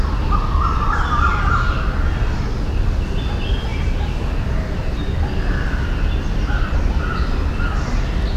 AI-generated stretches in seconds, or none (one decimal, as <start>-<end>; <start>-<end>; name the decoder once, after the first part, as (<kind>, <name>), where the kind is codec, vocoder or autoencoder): none